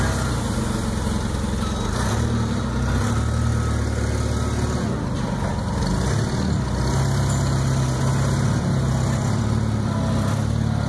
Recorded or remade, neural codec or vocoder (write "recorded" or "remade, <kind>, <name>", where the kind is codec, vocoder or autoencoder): recorded